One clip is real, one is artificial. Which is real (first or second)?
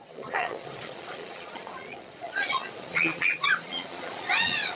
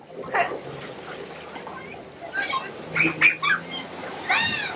second